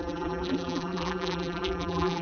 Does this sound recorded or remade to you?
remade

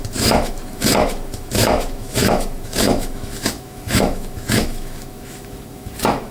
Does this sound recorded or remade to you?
remade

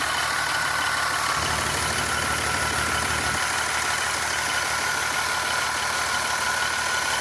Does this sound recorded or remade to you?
recorded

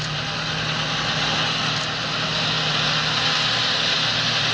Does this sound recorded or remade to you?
recorded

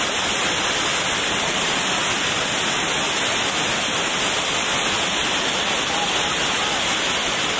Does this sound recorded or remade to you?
recorded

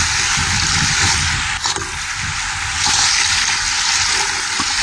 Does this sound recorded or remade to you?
recorded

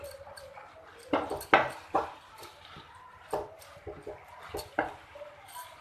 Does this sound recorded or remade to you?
recorded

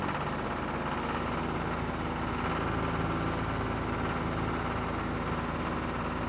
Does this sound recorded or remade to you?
recorded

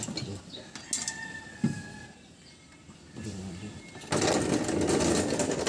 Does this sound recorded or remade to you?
recorded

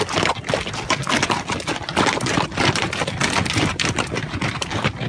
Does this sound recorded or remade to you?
recorded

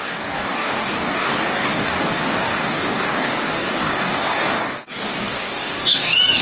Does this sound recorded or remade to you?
remade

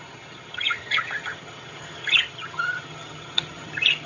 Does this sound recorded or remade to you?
remade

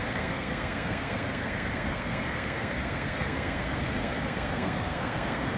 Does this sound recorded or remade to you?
remade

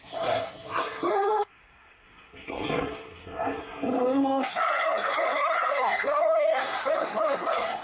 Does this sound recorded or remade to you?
remade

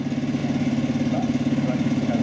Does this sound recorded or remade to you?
recorded